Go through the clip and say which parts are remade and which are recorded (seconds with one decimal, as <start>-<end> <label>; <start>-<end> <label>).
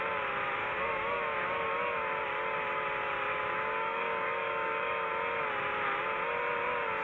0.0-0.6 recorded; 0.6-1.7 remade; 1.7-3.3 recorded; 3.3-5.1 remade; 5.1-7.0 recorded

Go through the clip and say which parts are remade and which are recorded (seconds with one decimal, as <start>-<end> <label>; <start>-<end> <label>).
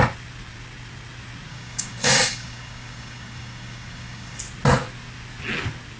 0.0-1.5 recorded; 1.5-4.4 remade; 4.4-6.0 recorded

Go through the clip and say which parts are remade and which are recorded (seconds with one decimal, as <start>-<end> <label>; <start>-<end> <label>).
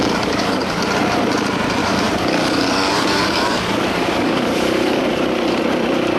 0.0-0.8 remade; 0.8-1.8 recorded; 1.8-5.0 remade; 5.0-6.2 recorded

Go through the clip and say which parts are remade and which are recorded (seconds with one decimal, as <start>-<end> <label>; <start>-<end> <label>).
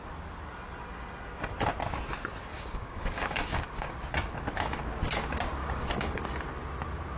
0.0-2.5 recorded; 2.5-3.9 remade; 3.9-5.6 recorded; 5.6-6.2 remade; 6.2-7.2 recorded